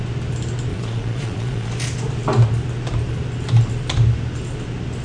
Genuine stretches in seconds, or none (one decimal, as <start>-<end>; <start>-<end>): 0.0-0.7; 1.7-5.0